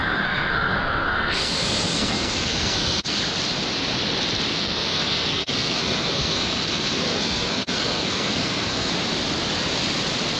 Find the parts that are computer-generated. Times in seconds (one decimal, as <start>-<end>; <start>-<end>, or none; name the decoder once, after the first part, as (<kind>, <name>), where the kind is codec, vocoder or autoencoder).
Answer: 0.0-3.2 (codec, SNAC); 4.5-8.9